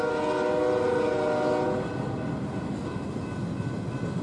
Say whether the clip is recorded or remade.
recorded